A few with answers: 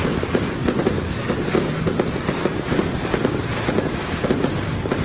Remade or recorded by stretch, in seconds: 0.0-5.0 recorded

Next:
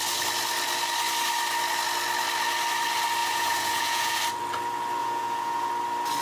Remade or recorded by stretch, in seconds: 0.0-3.2 recorded; 3.2-4.2 remade; 4.2-5.0 recorded; 5.0-5.7 remade; 5.7-6.2 recorded

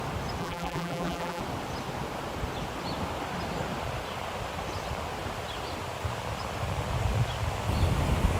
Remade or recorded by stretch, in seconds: 0.0-0.4 recorded; 0.4-1.4 remade; 1.4-8.4 recorded

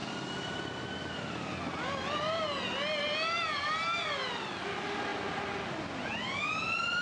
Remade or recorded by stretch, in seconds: 0.0-7.0 recorded

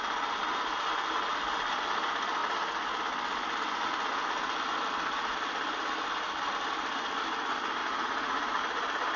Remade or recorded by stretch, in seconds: 0.0-7.8 recorded; 7.8-8.6 remade; 8.6-9.2 recorded

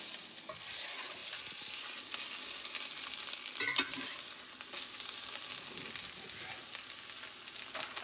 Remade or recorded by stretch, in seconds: 0.0-8.0 recorded

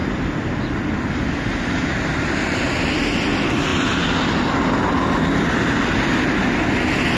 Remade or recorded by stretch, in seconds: 0.0-7.2 recorded